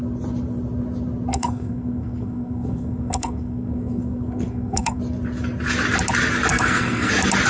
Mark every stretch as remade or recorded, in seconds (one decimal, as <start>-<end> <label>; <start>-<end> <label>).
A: 0.0-1.3 recorded; 1.3-5.0 remade; 5.0-6.5 recorded; 6.5-7.1 remade; 7.1-7.5 recorded